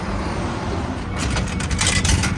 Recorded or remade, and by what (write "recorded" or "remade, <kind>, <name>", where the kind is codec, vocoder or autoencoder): recorded